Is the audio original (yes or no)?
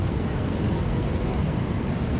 no